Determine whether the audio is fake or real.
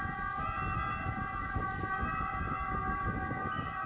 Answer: real